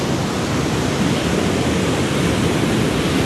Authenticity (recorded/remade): recorded